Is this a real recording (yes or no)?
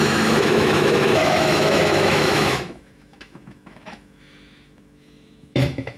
no